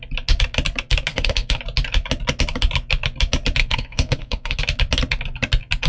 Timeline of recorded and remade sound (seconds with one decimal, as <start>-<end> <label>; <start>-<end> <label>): 0.0-1.1 recorded; 1.1-1.6 remade; 1.6-3.6 recorded; 3.6-4.6 remade; 4.6-5.9 recorded